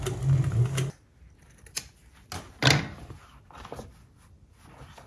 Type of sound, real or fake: real